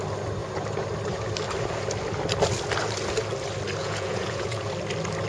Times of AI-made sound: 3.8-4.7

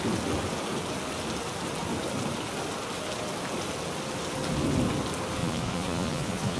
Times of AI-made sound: 5.4-6.6

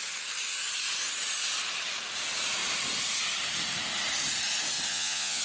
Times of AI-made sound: 4.9-5.4

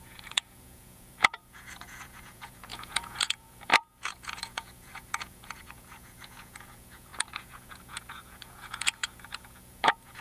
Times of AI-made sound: 0.0-10.2

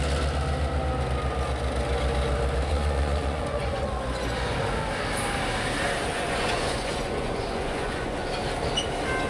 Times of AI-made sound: 2.7-4.6; 6.1-8.3

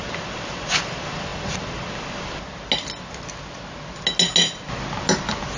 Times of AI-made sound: none

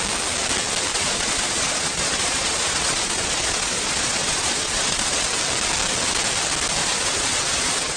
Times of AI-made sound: 0.9-5.2; 6.8-8.0